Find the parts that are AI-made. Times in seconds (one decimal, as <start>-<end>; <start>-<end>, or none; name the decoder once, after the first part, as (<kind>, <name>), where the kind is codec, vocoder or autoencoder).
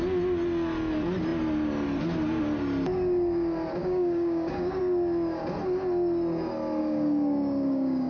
3.8-4.8 (codec, DAC); 6.8-8.1